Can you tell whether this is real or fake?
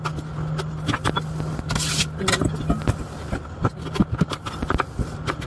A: real